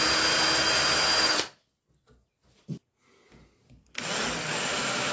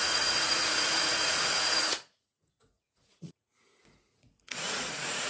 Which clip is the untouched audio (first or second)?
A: first